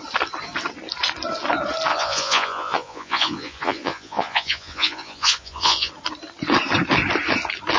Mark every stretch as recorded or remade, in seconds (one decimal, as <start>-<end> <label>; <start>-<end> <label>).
0.0-1.9 recorded; 1.9-5.9 remade; 5.9-7.8 recorded